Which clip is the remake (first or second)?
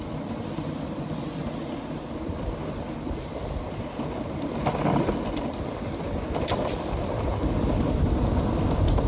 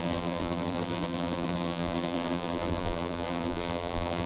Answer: second